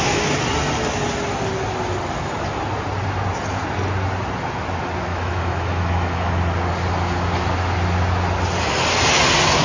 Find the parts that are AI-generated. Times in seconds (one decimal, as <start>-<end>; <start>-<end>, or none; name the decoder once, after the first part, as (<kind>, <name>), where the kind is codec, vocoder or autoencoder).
5.1-6.3 (autoencoder, DAC-VAE)